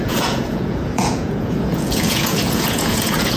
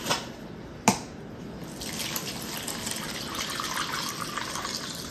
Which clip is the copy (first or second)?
first